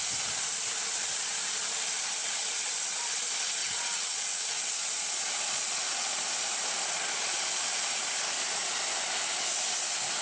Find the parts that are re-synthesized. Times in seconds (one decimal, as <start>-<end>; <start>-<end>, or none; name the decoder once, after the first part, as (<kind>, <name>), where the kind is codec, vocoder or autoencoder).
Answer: 3.6-4.6 (vocoder, WaveNeXt)